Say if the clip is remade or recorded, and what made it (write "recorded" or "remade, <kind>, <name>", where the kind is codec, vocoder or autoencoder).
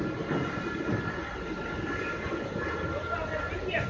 recorded